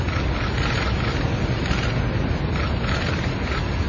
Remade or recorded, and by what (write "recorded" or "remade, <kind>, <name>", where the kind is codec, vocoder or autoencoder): recorded